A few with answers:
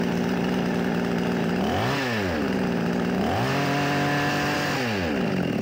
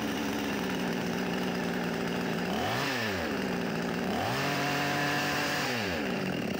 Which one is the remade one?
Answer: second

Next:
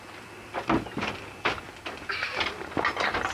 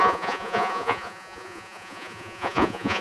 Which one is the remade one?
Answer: second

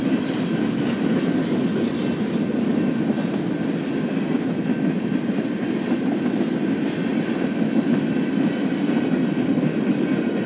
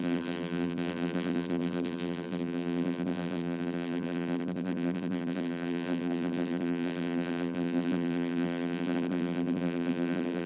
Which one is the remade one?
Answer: second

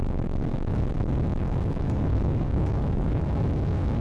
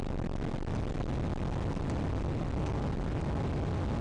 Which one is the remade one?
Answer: first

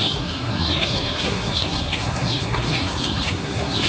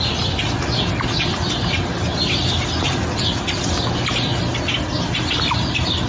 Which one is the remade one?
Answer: first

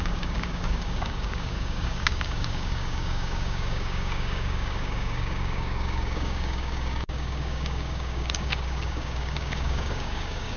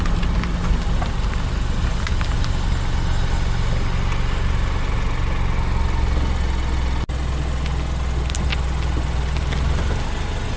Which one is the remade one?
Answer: first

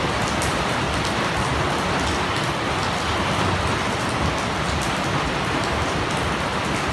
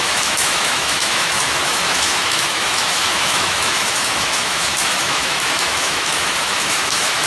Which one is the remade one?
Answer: second